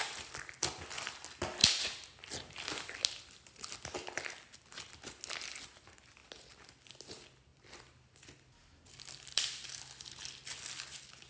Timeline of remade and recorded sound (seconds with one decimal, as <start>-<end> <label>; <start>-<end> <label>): 0.0-7.5 recorded; 7.5-8.5 remade; 8.5-11.3 recorded